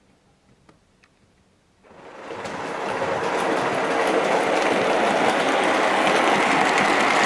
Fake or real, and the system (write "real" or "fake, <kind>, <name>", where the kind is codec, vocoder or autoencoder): real